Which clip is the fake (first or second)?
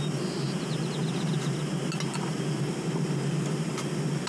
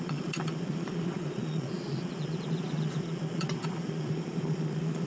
second